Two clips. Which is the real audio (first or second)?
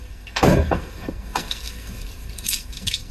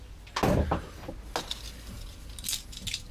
second